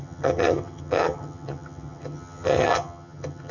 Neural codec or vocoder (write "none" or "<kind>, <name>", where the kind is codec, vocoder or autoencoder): vocoder, HiFi-GAN